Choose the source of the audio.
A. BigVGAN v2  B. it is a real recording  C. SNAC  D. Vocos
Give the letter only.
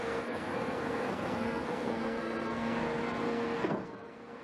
C